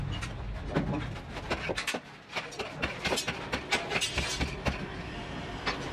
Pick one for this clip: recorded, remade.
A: recorded